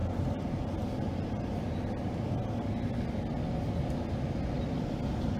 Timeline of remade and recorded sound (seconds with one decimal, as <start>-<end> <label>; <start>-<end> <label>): 0.0-5.4 recorded

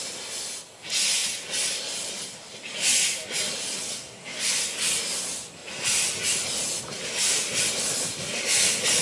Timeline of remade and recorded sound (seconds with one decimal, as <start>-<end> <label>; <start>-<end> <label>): 0.0-3.9 recorded; 3.9-4.5 remade; 4.5-9.0 recorded

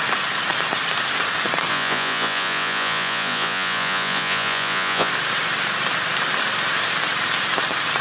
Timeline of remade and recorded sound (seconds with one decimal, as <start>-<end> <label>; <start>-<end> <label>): 0.0-1.7 recorded; 1.7-5.1 remade; 5.1-8.0 recorded

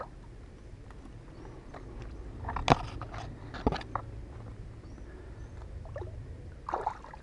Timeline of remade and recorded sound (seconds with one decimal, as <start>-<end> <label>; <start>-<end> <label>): 0.0-7.2 recorded